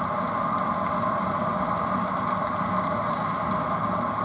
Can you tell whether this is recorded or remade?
recorded